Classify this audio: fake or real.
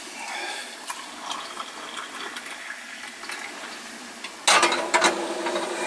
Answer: real